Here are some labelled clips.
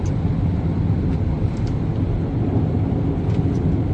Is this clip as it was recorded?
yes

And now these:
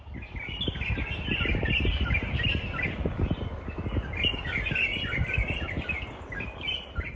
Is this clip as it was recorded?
yes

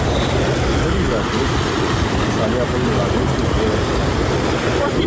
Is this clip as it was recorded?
yes